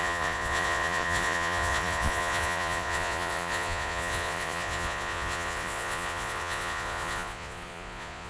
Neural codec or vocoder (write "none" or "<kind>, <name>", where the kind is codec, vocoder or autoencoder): vocoder, Vocos